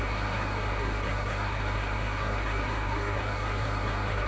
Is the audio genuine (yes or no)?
no